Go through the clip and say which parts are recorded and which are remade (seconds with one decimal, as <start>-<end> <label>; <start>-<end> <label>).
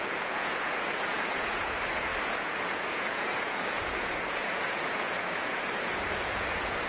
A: 0.0-6.9 remade